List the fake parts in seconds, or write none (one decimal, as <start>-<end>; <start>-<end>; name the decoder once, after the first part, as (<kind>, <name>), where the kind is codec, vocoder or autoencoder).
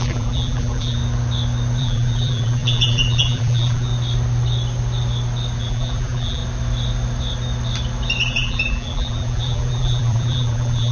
0.0-1.0 (vocoder, BigVGAN v2); 1.8-3.9; 5.6-6.4; 8.2-10.9